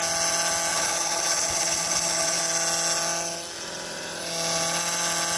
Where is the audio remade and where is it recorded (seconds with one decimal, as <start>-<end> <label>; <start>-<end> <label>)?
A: 0.0-0.7 recorded; 0.7-2.4 remade; 2.4-5.4 recorded